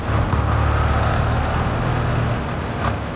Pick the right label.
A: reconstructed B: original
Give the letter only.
B